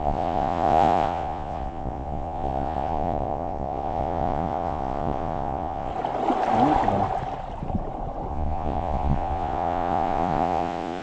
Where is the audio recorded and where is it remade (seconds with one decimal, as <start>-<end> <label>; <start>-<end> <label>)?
0.0-5.9 remade; 5.9-8.3 recorded; 8.3-11.0 remade